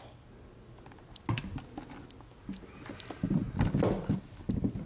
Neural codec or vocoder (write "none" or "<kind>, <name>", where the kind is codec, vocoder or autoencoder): none